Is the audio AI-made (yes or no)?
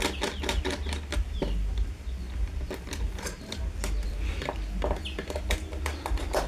no